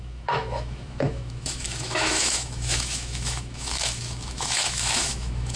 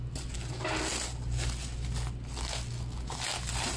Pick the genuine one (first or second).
second